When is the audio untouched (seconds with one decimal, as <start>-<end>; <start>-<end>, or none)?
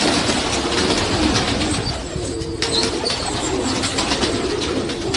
0.0-5.2